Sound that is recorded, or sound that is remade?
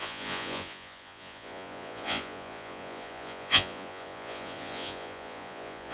remade